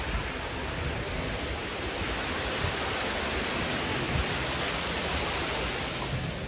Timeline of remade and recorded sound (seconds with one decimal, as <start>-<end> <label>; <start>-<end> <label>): 0.0-6.5 recorded